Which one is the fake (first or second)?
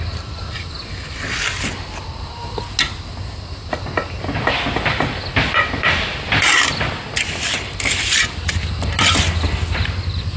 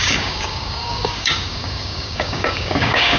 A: second